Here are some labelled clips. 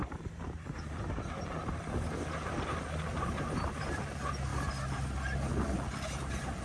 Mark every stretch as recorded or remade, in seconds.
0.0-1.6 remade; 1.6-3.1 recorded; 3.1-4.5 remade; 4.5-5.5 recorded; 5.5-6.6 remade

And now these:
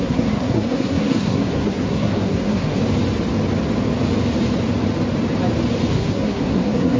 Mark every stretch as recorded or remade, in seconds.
0.0-2.8 remade; 2.8-5.9 recorded; 5.9-7.0 remade